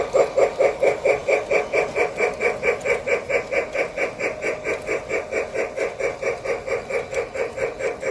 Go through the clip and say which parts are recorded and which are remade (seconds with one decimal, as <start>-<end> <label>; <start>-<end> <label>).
0.0-8.1 recorded